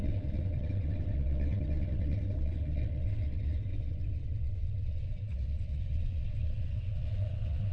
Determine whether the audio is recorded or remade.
remade